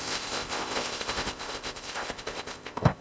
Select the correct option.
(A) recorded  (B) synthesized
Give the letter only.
B